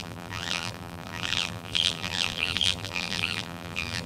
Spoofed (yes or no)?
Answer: yes